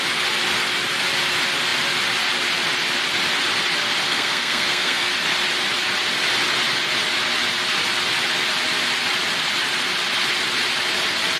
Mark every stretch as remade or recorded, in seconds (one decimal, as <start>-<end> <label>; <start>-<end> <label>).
0.0-4.1 recorded; 4.1-5.1 remade; 5.1-11.4 recorded